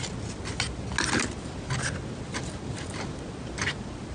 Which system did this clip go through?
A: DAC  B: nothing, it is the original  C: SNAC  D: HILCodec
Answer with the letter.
B